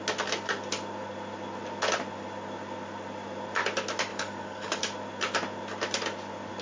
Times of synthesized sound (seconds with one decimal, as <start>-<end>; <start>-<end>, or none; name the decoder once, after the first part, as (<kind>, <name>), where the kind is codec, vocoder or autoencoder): 4.1-4.8 (codec, DAC)